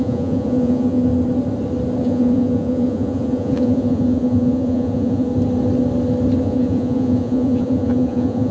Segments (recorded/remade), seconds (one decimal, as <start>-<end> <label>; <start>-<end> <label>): 0.0-1.1 remade; 1.1-2.0 recorded; 2.0-5.3 remade; 5.3-6.4 recorded; 6.4-8.5 remade